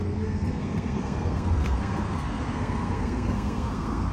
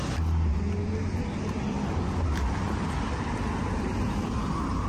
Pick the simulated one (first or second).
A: first